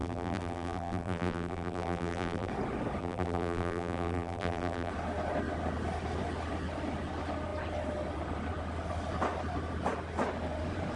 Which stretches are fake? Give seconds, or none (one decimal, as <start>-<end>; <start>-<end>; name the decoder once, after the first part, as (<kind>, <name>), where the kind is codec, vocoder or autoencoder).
0.0-2.5 (vocoder, BigVGAN v2); 3.0-4.9